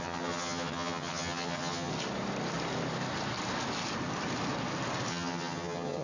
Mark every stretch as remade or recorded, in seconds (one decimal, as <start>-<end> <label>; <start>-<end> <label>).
0.0-1.9 remade; 1.9-5.1 recorded; 5.1-6.0 remade